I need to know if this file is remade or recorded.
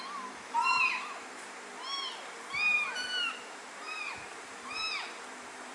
remade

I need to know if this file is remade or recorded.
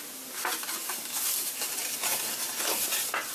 recorded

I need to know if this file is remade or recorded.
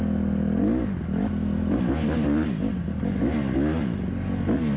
recorded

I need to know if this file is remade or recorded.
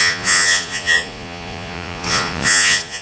remade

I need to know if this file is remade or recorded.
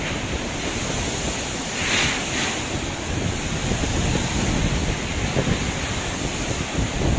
recorded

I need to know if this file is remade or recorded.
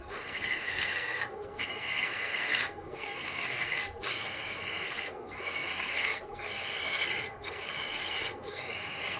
remade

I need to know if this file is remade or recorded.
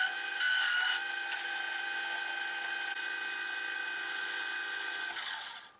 recorded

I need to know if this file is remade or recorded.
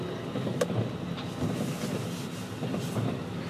recorded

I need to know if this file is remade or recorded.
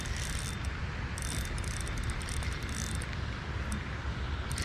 recorded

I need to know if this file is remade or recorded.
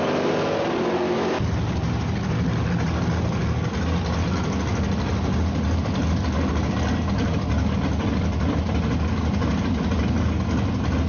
recorded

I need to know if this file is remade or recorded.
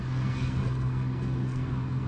remade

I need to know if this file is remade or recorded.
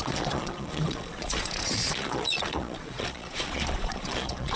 remade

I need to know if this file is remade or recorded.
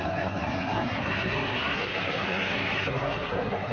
remade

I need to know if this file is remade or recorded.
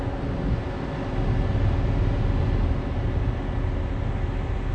recorded